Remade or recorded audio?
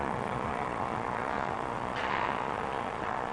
remade